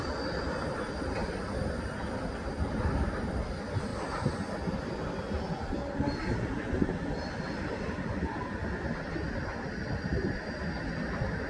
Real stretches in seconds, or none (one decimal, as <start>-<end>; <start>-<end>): 0.0-11.5